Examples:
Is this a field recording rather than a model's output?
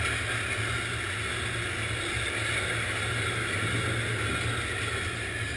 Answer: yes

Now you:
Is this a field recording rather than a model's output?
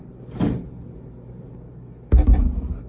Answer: yes